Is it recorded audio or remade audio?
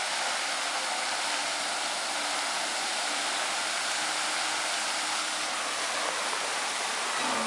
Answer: recorded